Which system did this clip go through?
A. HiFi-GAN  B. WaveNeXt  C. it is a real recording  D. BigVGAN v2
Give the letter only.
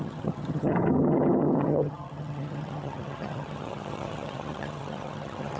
A